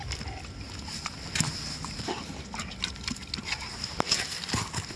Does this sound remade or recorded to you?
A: recorded